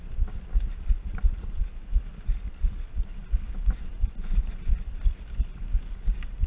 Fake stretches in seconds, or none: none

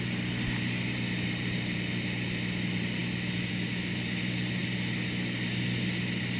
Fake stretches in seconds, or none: none

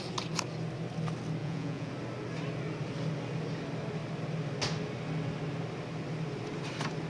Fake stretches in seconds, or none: 1.4-1.9 (vocoder, Vocos)

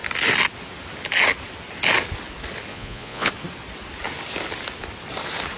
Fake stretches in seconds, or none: 2.7-3.3 (vocoder, Vocos)

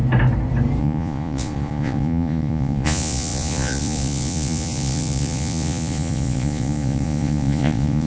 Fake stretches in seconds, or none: 0.8-8.1 (vocoder, Vocos)

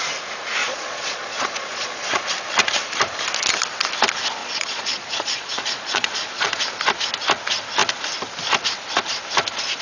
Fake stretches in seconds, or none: 0.6-2.2 (vocoder, Vocos); 4.4-6.6

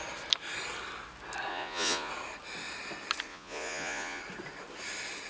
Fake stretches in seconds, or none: 1.5-2.1 (vocoder, Vocos); 3.3-4.2

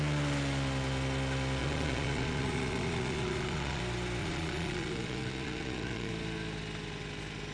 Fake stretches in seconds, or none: 1.6-3.8 (vocoder, Vocos); 4.2-6.1